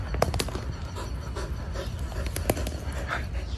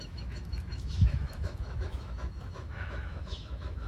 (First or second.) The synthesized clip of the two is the second